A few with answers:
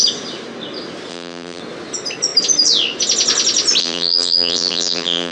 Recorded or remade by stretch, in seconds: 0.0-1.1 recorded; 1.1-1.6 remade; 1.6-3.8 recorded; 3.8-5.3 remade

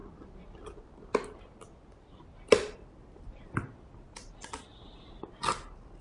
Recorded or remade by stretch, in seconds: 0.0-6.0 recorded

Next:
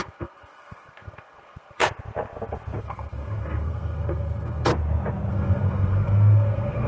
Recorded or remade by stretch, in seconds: 0.0-1.8 remade; 1.8-2.8 recorded; 2.8-4.7 remade; 4.7-5.3 recorded; 5.3-6.9 remade

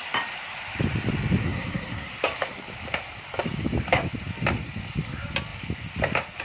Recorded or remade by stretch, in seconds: 0.0-1.4 recorded; 1.4-2.2 remade; 2.2-6.4 recorded

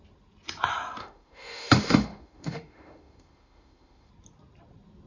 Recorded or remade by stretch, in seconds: 0.0-1.0 recorded; 1.0-4.1 remade; 4.1-5.1 recorded

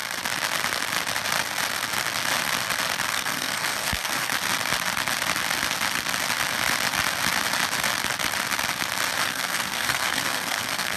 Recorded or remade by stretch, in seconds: 0.0-3.1 recorded; 3.1-4.3 remade; 4.3-9.2 recorded; 9.2-11.0 remade